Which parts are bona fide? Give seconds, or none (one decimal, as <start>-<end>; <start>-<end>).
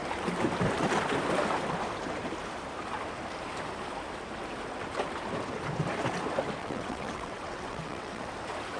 0.0-6.6; 8.3-8.8